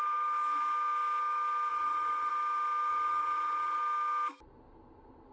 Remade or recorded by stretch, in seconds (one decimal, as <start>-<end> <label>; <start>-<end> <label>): 0.0-1.7 recorded; 1.7-2.3 remade; 2.3-2.9 recorded; 2.9-3.8 remade; 3.8-5.3 recorded